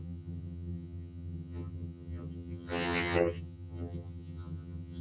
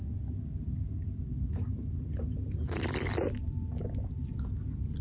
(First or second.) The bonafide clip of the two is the second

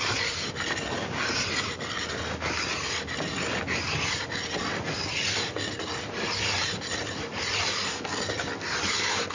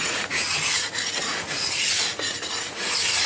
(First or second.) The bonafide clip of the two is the first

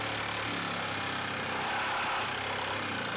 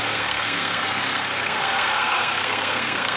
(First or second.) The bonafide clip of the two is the first